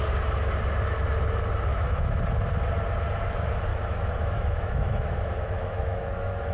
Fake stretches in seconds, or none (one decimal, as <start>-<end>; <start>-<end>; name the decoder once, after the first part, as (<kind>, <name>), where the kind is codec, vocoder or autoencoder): 1.7-2.2 (autoencoder, DAC-VAE); 3.7-6.5